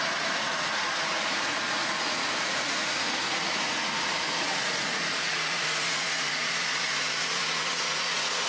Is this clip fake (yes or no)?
yes